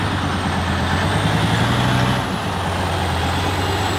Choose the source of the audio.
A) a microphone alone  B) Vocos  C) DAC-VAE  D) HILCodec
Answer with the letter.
A